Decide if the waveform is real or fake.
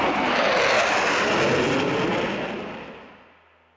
real